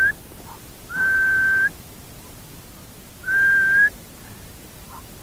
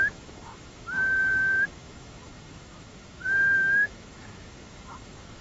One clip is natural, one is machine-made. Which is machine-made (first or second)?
second